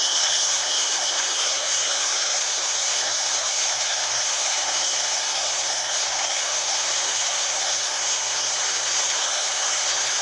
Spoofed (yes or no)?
yes